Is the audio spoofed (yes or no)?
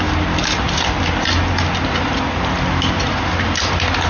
no